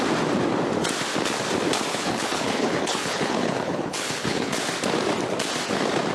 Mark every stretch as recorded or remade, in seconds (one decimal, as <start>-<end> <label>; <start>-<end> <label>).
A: 0.0-1.9 recorded; 1.9-4.5 remade; 4.5-6.1 recorded